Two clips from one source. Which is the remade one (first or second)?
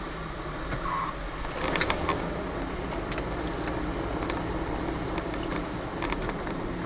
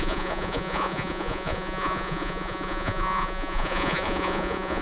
second